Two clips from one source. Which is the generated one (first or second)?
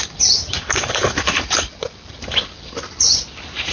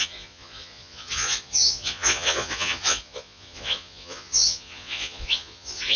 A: second